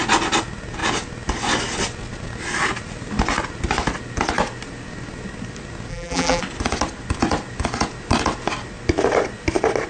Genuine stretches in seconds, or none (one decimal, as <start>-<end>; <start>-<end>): 0.0-5.9; 6.4-9.9